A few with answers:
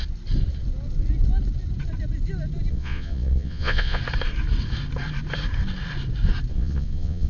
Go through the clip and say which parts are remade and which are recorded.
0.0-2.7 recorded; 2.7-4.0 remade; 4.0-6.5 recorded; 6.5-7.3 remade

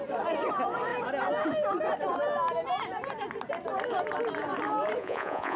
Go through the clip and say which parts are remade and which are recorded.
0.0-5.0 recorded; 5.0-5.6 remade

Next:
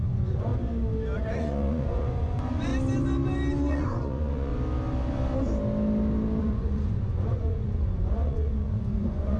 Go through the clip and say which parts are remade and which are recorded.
0.0-0.5 remade; 0.5-1.3 recorded; 1.3-2.7 remade; 2.7-3.7 recorded; 3.7-4.5 remade; 4.5-6.4 recorded; 6.4-9.4 remade

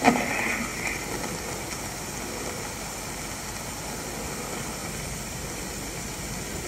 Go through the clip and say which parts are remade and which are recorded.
0.0-6.7 recorded

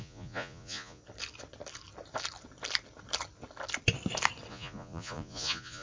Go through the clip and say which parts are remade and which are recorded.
0.0-1.0 remade; 1.0-4.5 recorded; 4.5-5.8 remade